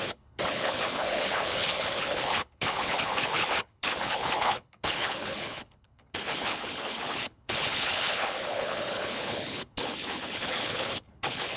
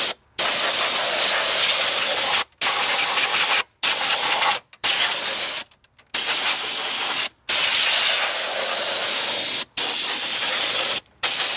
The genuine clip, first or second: second